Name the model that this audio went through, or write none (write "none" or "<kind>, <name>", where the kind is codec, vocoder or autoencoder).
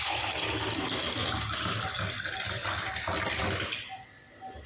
none